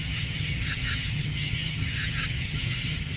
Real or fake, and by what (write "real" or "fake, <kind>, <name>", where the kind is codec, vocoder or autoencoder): fake, vocoder, HiFi-GAN